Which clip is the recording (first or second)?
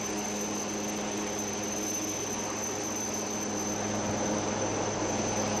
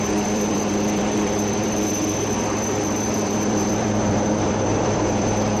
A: first